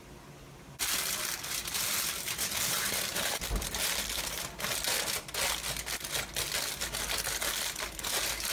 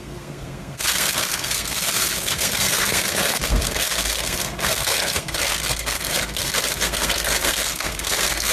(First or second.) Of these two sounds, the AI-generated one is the second